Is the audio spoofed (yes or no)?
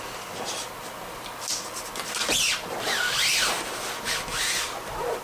no